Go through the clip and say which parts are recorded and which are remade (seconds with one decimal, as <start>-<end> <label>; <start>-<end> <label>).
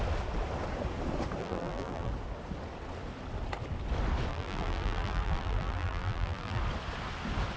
0.0-1.4 recorded; 1.4-2.1 remade; 2.1-4.3 recorded; 4.3-6.6 remade; 6.6-7.6 recorded